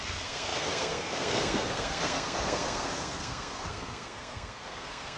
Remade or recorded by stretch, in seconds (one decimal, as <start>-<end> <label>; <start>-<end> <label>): 0.0-5.2 remade